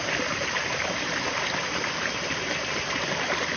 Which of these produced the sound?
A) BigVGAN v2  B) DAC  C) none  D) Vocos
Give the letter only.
C